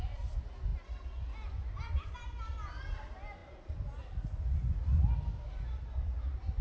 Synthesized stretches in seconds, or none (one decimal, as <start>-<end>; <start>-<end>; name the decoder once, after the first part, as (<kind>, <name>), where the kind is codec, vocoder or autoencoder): none